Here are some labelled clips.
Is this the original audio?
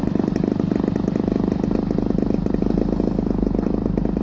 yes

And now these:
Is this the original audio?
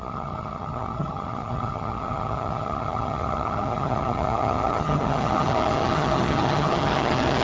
no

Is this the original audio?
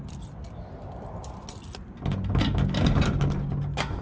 yes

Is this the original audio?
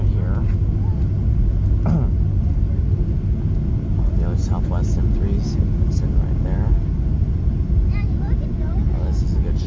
yes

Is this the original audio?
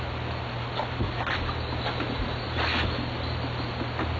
yes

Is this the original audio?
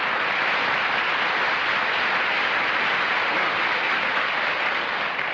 yes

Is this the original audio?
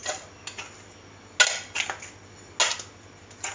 yes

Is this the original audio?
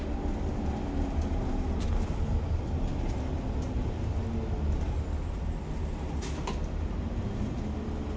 yes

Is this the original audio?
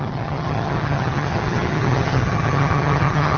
no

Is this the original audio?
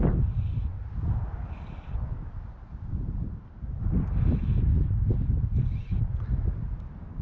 yes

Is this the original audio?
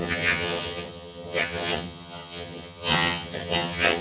no